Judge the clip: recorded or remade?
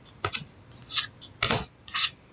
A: recorded